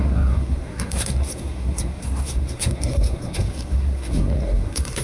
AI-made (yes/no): yes